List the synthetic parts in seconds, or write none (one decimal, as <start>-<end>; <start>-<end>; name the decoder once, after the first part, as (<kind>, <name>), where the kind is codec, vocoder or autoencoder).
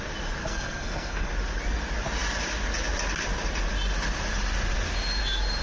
0.4-1.3 (codec, SNAC)